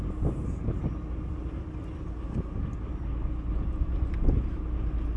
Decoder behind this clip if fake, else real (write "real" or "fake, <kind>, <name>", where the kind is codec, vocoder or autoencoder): real